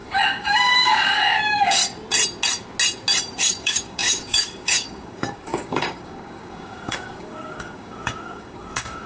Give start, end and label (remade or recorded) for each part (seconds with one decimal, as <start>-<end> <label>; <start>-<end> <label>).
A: 0.0-1.8 remade; 1.8-3.4 recorded; 3.4-9.1 remade